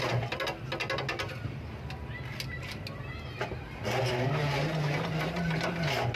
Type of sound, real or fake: real